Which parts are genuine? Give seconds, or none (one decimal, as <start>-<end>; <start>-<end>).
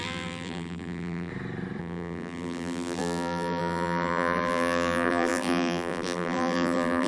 1.3-1.8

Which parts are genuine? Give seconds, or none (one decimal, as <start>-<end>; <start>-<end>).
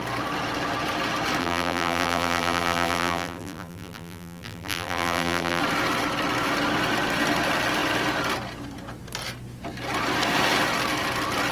0.0-1.4; 5.6-11.5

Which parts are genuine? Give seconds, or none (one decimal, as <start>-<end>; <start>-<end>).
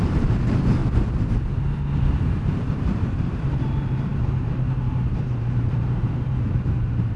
0.8-2.0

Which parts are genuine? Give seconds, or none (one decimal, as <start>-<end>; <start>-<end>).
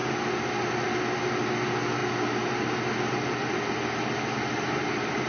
0.0-5.3